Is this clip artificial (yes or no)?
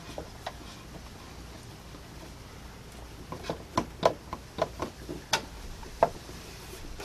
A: no